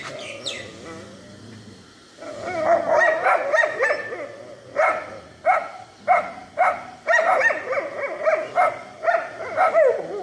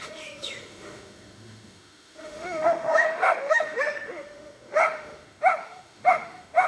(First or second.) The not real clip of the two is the second